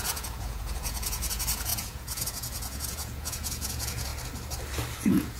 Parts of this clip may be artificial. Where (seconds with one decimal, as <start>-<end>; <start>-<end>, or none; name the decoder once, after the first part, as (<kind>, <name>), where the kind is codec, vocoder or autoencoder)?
0.0-4.1 (vocoder, Vocos); 5.0-5.4